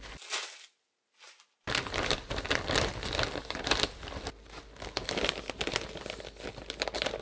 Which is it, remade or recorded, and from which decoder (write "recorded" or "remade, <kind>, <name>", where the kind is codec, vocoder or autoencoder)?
recorded